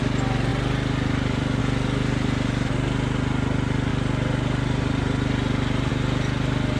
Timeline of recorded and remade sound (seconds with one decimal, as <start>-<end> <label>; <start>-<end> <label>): 0.0-0.5 recorded; 0.5-1.6 remade; 1.6-6.8 recorded